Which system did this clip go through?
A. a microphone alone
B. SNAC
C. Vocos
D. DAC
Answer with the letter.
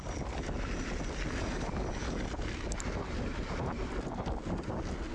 A